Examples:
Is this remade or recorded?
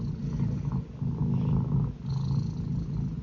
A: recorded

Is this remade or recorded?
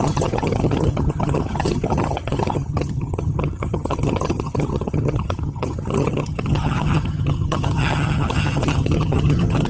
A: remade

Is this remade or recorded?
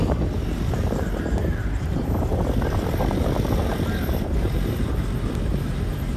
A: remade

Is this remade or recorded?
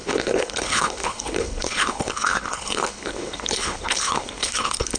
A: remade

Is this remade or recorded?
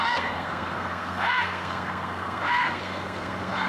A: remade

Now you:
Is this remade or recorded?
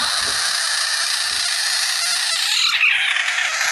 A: recorded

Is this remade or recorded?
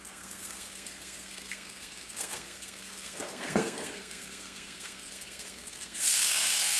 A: remade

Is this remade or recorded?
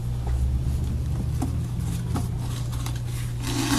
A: recorded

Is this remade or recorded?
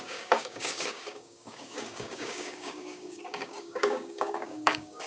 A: remade